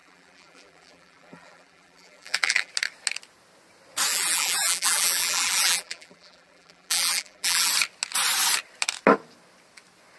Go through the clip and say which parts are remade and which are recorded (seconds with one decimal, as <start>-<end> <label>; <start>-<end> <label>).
0.0-2.7 remade; 2.7-4.1 recorded; 4.1-7.7 remade; 7.7-10.2 recorded